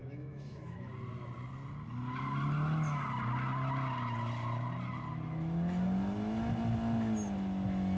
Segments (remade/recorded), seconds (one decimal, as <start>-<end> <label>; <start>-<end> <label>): 0.0-0.9 remade; 0.9-8.0 recorded